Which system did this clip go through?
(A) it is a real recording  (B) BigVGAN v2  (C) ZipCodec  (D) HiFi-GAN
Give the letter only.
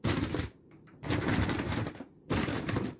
B